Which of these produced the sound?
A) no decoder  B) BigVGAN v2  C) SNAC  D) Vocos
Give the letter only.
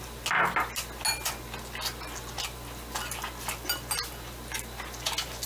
A